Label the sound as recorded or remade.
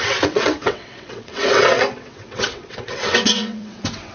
remade